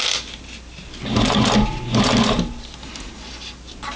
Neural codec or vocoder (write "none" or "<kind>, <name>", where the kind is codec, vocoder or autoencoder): none